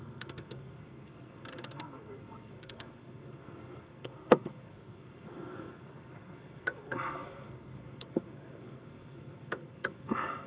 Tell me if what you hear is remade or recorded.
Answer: remade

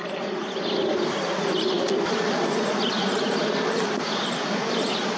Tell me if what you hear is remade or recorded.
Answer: recorded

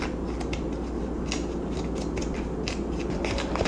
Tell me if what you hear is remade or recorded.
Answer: recorded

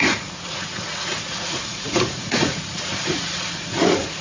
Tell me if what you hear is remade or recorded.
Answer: remade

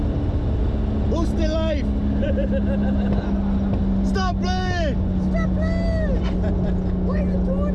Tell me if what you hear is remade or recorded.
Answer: recorded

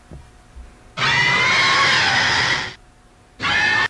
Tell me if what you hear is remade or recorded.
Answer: recorded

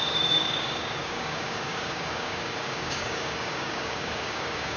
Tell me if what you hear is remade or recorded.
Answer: remade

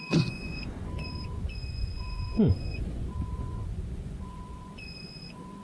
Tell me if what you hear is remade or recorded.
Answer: remade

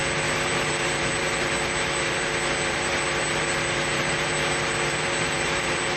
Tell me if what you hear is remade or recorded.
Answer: remade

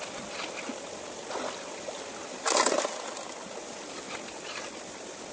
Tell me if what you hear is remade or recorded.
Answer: recorded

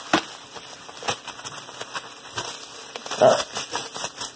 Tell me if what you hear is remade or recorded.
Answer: recorded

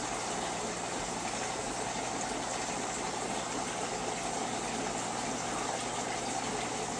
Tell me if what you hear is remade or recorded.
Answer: recorded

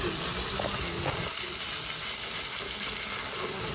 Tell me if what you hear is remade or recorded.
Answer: recorded